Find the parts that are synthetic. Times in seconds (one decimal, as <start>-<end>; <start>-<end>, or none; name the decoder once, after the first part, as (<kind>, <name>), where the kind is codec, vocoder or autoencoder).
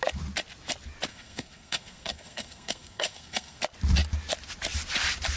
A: 1.1-3.6 (codec, SNAC)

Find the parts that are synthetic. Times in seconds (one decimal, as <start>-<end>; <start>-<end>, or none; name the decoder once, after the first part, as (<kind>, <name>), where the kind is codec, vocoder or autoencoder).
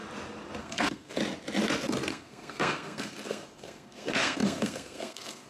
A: 0.6-1.2 (codec, SNAC); 2.1-5.5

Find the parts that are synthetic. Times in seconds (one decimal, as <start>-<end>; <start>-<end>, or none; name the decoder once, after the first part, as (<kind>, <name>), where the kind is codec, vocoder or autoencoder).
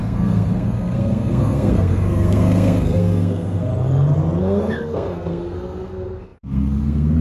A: 0.0-3.7 (codec, SNAC); 4.4-7.2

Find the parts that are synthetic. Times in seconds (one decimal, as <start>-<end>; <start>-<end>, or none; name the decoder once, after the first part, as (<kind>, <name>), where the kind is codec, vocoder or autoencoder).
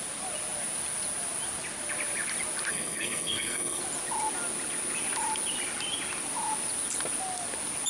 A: 2.7-3.8 (codec, SNAC)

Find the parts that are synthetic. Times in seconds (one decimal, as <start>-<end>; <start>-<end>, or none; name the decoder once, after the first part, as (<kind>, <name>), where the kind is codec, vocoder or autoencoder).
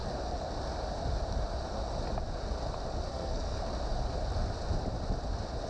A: 3.1-3.6 (codec, SNAC)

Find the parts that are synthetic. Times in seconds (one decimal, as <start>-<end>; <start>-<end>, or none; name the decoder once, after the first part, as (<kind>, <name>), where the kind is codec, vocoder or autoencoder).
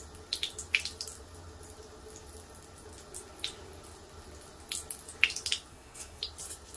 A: 5.7-6.2 (codec, SNAC)